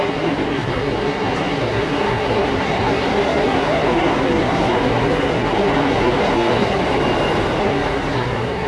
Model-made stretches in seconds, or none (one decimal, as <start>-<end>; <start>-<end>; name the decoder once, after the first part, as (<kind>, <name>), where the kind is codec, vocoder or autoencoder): 0.0-6.8 (codec, SNAC); 7.6-8.7